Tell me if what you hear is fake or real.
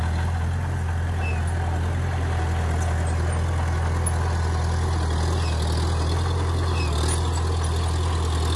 real